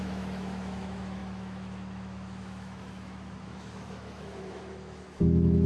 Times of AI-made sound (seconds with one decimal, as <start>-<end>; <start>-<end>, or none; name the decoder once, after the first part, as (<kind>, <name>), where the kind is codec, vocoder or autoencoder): 0.0-5.7 (autoencoder, DAC-VAE)